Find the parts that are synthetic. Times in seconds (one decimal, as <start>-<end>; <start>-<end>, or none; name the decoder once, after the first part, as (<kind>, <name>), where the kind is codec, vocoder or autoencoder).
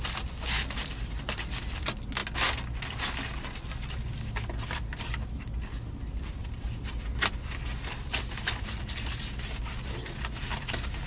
none